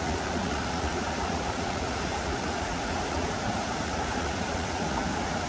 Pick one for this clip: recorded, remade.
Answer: remade